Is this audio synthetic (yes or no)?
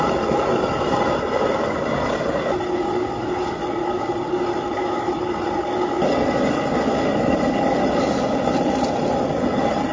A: no